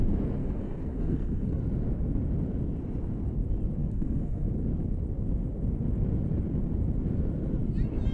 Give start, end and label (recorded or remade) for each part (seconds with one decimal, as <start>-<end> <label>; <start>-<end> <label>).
0.0-0.4 recorded; 0.4-1.6 remade; 1.6-3.8 recorded; 3.8-4.5 remade; 4.5-8.1 recorded